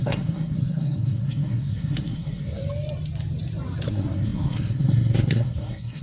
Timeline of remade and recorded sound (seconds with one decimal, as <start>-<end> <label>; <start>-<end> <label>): 0.0-2.6 remade; 2.6-3.9 recorded; 3.9-6.0 remade

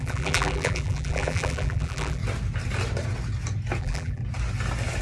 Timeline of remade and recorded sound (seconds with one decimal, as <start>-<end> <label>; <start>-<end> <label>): 0.0-2.2 remade; 2.2-3.8 recorded; 3.8-4.2 remade; 4.2-5.0 recorded